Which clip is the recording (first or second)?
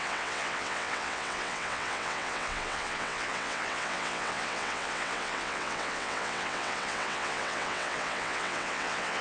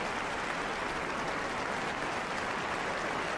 second